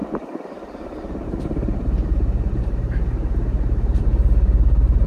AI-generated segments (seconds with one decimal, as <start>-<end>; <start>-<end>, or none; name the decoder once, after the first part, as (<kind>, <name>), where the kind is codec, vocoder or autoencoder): 0.0-4.1 (vocoder, BigVGAN v2)